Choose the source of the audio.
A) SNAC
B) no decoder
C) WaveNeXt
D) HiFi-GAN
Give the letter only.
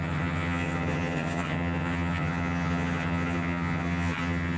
D